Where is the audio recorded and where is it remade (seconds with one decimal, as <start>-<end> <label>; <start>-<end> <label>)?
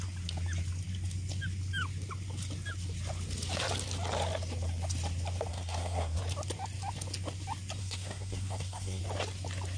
0.0-5.5 recorded; 5.5-6.2 remade; 6.2-7.8 recorded; 7.8-9.0 remade; 9.0-9.8 recorded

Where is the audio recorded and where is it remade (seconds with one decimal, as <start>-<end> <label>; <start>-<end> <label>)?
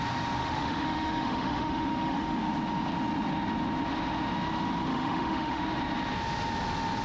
0.0-0.4 recorded; 0.4-2.5 remade; 2.5-4.9 recorded; 4.9-5.6 remade; 5.6-7.0 recorded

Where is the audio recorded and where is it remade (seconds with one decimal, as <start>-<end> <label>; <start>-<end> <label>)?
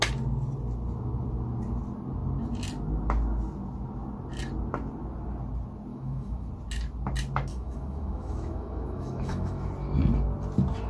0.0-5.9 recorded; 5.9-6.5 remade; 6.5-7.5 recorded; 7.5-9.7 remade; 9.7-10.9 recorded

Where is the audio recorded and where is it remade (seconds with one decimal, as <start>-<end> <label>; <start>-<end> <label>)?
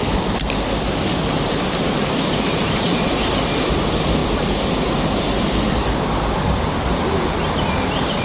0.0-2.5 recorded; 2.5-3.0 remade; 3.0-8.2 recorded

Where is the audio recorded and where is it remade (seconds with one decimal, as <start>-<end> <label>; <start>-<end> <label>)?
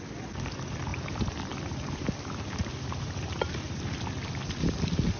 0.0-0.9 recorded; 0.9-4.0 remade; 4.0-5.2 recorded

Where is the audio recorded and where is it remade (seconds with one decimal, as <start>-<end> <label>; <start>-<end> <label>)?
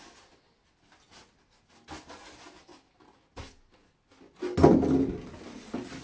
0.0-6.0 recorded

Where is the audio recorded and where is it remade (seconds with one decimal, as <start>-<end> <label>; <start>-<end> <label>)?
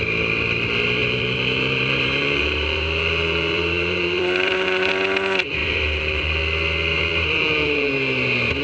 0.0-1.0 recorded; 1.0-4.9 remade; 4.9-5.6 recorded; 5.6-6.4 remade; 6.4-6.9 recorded; 6.9-7.9 remade; 7.9-8.6 recorded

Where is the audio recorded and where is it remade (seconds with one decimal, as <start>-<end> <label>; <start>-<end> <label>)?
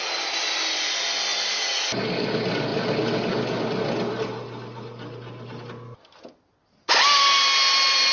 0.0-8.1 recorded